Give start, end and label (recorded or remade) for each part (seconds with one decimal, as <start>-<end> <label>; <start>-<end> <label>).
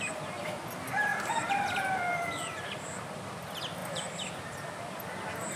0.0-1.1 recorded; 1.1-3.3 remade; 3.3-3.8 recorded; 3.8-5.0 remade; 5.0-5.6 recorded